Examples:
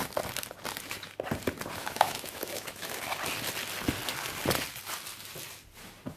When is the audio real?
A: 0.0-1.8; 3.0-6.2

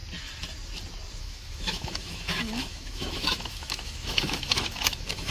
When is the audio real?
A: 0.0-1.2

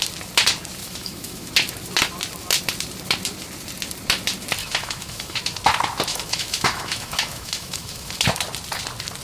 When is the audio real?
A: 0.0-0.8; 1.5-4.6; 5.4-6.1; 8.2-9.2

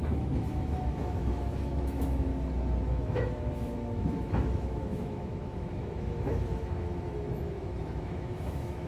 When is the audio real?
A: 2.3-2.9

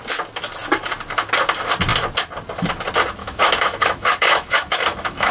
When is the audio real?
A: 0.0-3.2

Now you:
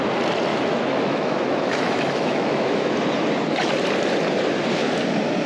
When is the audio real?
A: 0.0-0.5; 2.9-5.5